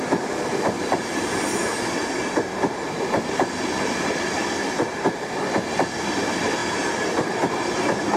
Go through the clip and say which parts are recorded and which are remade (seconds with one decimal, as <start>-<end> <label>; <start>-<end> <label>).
0.0-8.2 recorded